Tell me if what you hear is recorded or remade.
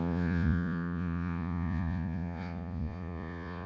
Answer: remade